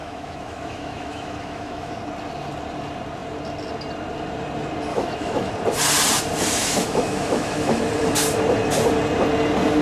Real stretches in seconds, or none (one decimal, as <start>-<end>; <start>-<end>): 1.9-4.9; 5.5-6.6; 7.8-9.8